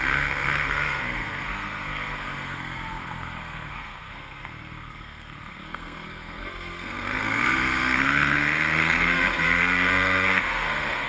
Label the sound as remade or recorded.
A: remade